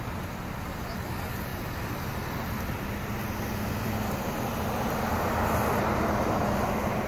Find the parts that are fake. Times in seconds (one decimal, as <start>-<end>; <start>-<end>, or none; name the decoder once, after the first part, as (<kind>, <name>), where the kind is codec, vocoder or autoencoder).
none